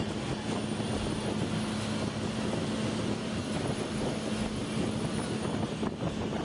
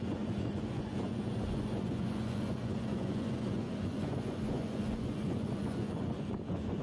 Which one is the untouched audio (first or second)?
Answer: first